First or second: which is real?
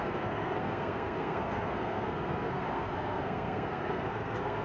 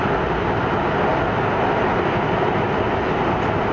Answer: second